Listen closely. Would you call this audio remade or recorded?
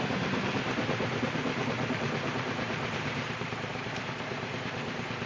remade